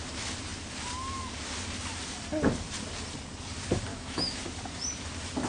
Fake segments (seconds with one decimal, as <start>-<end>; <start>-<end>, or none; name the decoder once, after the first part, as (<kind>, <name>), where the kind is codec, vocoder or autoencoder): 3.9-4.4 (autoencoder, DAC-VAE)

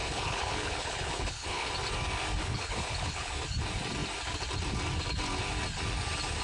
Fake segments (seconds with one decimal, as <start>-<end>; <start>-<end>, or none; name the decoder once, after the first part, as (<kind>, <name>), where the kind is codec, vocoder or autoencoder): 0.0-1.7 (codec, HILCodec); 2.4-3.3

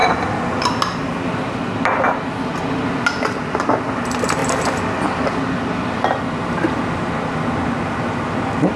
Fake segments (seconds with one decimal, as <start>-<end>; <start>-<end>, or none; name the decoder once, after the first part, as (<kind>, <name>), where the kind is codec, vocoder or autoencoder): none

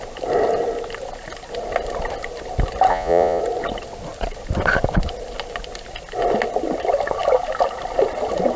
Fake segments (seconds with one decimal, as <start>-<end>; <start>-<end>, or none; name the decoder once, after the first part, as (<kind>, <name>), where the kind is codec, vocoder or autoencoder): 2.9-3.4 (vocoder, Vocos)